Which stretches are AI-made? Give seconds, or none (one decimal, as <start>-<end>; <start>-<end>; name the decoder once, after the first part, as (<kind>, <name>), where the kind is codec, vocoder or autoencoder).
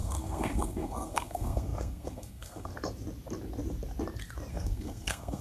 0.0-2.7 (codec, SNAC); 4.5-5.4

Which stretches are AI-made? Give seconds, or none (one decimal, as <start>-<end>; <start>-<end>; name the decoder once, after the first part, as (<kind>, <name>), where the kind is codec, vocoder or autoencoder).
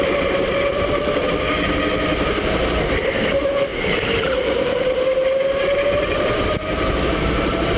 0.5-1.2 (vocoder, BigVGAN v2); 3.7-4.8; 5.6-6.9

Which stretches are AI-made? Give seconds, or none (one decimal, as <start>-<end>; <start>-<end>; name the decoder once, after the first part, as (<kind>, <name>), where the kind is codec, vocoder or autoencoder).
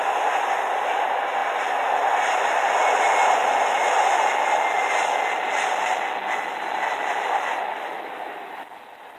none